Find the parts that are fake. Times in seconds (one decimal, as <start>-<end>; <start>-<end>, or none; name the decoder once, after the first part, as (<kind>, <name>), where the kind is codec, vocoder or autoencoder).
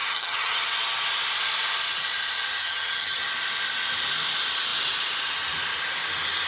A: 0.0-0.6 (vocoder, HiFi-GAN); 2.6-3.2